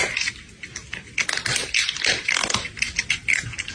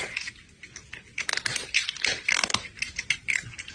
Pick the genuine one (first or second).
first